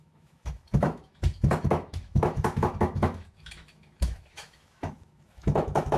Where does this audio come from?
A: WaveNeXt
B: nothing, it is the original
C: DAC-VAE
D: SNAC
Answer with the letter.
C